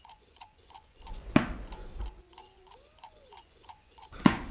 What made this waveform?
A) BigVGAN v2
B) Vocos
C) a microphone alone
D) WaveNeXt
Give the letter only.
B